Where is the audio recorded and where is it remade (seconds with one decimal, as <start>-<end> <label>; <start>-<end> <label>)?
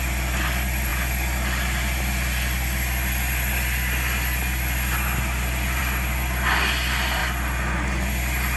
0.0-8.6 recorded